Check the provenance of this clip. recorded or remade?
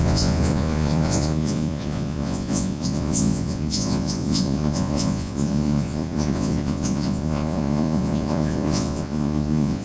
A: remade